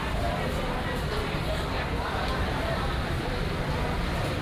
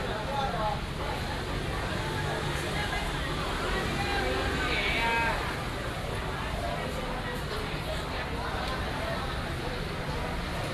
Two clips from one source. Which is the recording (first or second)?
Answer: second